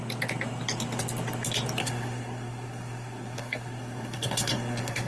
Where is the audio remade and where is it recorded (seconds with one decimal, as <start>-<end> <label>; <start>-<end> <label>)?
0.0-1.8 recorded; 1.8-5.1 remade